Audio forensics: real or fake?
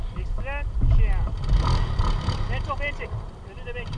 real